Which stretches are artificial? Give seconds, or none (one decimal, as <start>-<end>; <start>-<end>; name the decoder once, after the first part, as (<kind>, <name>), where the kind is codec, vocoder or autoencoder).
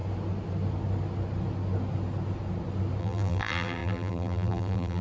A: 3.0-5.0 (vocoder, BigVGAN v2)